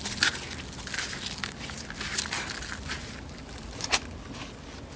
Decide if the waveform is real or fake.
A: real